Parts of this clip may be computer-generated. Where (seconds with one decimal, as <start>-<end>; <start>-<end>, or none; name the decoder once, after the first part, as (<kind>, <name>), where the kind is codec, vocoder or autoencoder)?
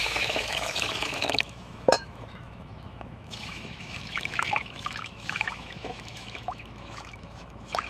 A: 0.0-7.9 (autoencoder, DAC-VAE)